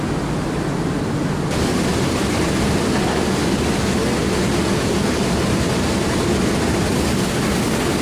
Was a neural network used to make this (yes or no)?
no